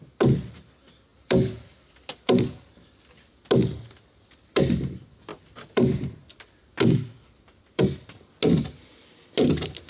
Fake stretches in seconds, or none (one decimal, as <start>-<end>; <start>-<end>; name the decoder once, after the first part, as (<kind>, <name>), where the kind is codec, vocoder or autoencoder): 1.1-3.4 (vocoder, BigVGAN v2); 5.3-7.8